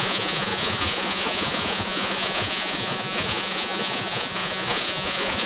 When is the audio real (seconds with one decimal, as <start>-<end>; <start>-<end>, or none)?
none